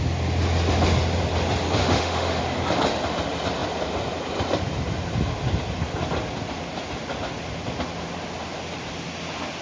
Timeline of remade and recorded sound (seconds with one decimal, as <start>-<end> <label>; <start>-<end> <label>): 0.0-1.8 recorded; 1.8-2.4 remade; 2.4-9.6 recorded